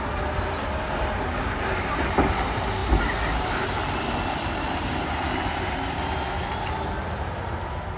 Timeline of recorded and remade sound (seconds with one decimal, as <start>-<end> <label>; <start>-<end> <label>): 0.0-8.0 recorded